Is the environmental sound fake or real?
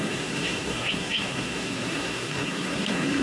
fake